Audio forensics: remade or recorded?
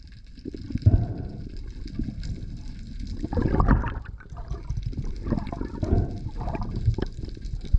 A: recorded